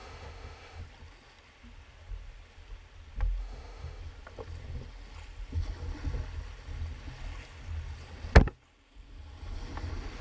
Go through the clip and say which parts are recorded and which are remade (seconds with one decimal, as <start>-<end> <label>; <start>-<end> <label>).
0.0-0.8 remade; 0.8-3.4 recorded; 3.4-4.0 remade; 4.0-10.2 recorded